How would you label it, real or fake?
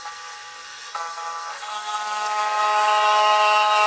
fake